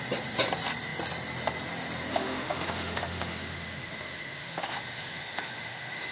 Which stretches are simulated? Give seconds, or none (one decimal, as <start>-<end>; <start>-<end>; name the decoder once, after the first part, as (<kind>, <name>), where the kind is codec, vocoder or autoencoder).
2.1-6.1 (autoencoder, DAC-VAE)

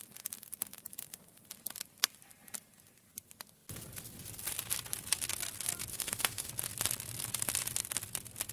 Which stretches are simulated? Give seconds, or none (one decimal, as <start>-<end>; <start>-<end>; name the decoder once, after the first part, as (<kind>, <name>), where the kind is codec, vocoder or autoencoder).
5.9-6.5 (autoencoder, DAC-VAE)

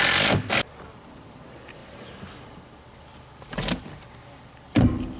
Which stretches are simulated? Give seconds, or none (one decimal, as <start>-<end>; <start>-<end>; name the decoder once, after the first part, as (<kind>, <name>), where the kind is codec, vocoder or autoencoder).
none

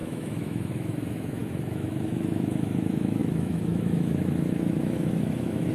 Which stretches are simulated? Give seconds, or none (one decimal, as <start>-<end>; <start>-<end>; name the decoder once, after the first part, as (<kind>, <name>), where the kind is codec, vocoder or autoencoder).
0.0-5.7 (autoencoder, DAC-VAE)

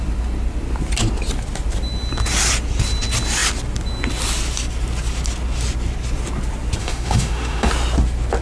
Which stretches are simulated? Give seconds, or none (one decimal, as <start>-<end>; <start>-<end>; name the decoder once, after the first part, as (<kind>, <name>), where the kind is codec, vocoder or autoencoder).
6.8-7.7 (autoencoder, DAC-VAE)